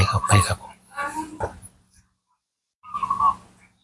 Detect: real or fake real